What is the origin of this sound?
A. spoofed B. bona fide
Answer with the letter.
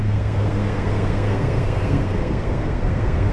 A